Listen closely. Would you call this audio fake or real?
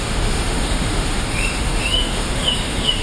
fake